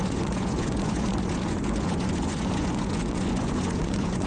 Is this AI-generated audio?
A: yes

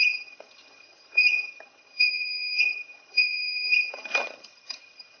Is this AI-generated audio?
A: yes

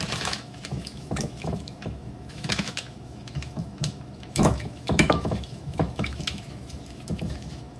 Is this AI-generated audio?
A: yes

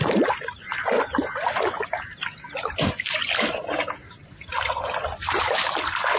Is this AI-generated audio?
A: no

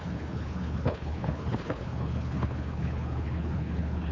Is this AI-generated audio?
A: yes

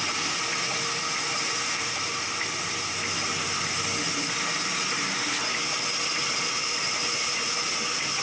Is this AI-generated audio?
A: no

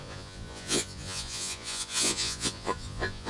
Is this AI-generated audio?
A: yes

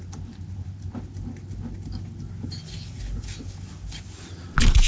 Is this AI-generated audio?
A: no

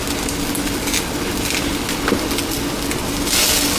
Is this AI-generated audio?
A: no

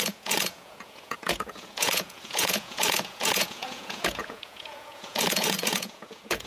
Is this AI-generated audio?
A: yes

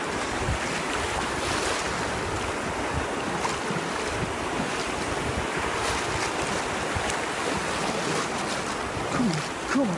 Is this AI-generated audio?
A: no